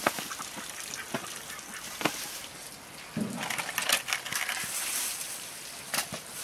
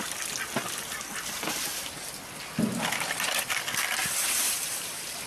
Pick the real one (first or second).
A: first